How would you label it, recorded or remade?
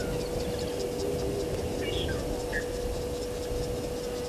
recorded